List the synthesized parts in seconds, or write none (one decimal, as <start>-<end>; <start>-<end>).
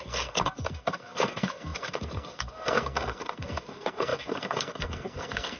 0.0-5.6